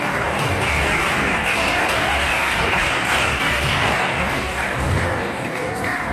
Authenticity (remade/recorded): remade